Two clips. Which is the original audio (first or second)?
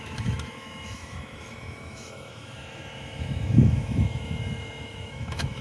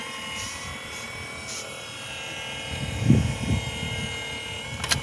second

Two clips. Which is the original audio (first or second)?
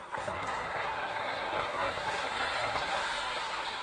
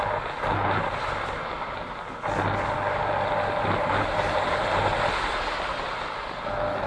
second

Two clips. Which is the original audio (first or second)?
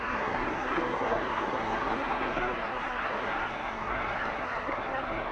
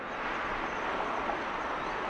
second